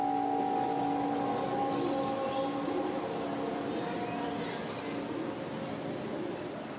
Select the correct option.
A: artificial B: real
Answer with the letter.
B